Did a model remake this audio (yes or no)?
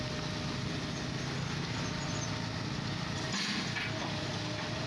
no